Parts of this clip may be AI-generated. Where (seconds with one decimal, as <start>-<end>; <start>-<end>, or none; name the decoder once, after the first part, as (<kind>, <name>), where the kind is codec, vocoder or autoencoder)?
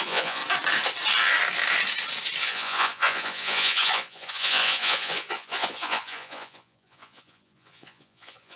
0.0-0.4 (vocoder, Vocos); 2.4-8.6